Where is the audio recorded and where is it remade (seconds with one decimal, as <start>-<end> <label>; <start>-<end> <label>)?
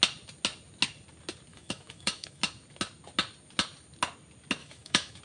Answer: 0.0-1.5 recorded; 1.5-2.4 remade; 2.4-4.6 recorded; 4.6-5.2 remade